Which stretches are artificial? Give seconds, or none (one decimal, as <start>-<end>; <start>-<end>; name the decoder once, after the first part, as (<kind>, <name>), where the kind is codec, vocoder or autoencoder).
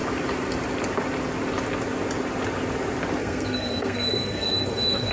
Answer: 3.2-5.1 (codec, SNAC)